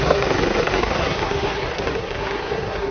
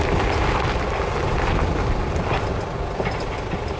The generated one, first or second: first